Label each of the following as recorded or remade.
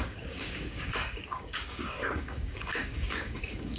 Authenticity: remade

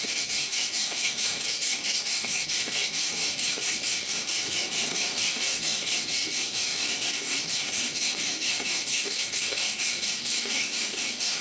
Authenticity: remade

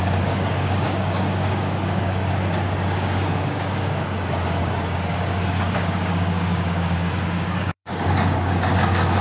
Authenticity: remade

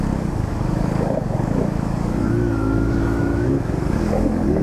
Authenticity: remade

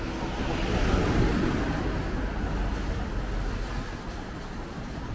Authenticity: recorded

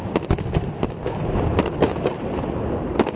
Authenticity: recorded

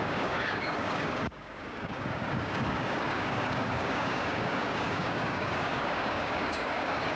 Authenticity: remade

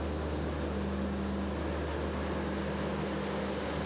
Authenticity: recorded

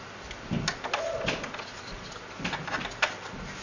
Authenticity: recorded